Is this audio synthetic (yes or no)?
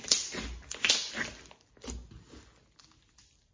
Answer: no